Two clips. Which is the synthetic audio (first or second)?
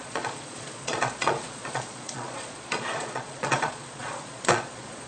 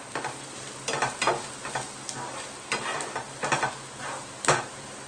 first